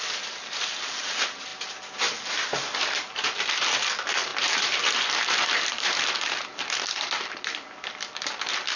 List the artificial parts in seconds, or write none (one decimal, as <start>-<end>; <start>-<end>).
0.0-1.5; 2.3-8.8